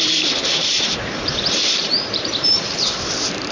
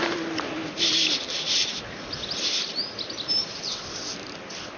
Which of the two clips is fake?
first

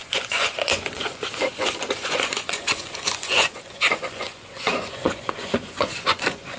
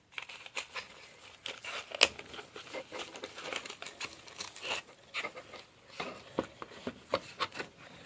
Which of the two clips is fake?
first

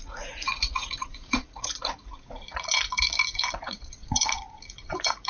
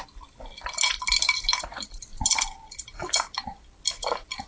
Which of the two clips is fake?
first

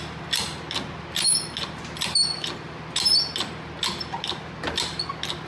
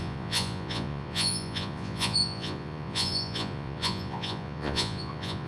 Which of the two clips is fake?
second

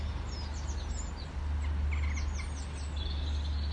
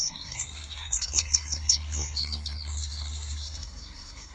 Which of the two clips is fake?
second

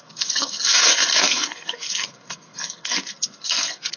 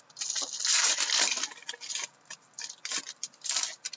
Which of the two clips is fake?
first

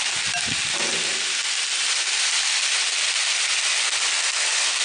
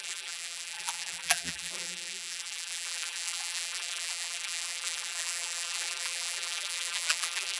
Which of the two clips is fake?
second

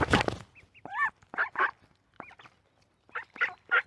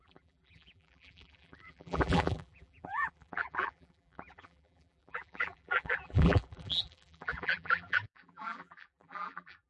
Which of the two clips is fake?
second